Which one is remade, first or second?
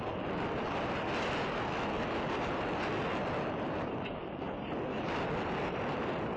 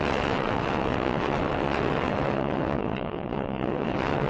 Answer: second